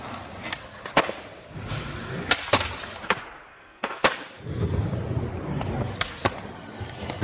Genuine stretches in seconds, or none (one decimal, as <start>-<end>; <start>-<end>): 0.0-3.5; 4.1-7.2